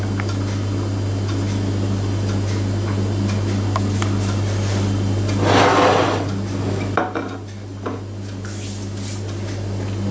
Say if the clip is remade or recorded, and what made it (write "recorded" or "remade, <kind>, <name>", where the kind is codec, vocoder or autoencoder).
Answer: recorded